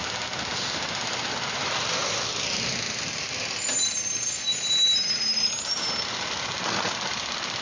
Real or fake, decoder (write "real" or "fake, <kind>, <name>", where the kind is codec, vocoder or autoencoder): real